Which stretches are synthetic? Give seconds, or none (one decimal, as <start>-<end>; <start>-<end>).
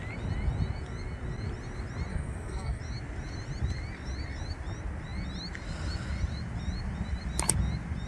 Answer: 2.1-2.8